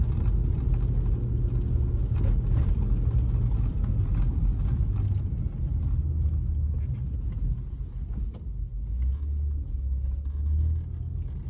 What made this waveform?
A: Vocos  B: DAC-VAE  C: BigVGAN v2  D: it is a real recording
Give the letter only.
D